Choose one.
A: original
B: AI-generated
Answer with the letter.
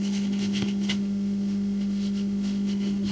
B